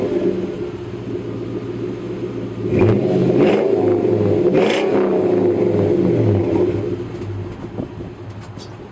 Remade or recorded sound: recorded